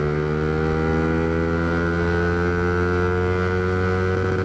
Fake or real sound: real